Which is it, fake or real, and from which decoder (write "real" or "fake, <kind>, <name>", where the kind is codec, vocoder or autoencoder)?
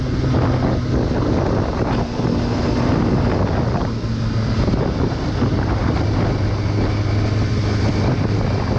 real